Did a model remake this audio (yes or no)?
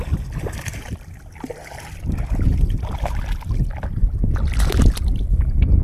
no